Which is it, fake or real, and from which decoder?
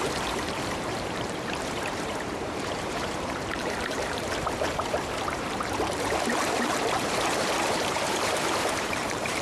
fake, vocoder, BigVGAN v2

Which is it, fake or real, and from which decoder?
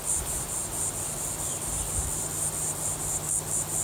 real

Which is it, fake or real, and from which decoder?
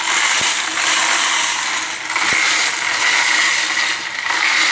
real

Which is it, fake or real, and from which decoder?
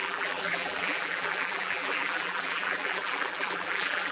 fake, vocoder, BigVGAN v2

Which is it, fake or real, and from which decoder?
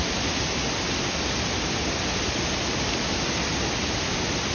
real